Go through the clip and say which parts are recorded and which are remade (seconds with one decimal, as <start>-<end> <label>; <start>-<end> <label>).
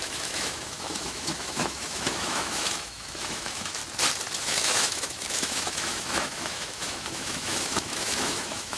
0.0-3.8 remade; 3.8-4.4 recorded; 4.4-8.8 remade